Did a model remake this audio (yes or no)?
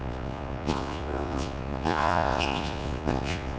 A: yes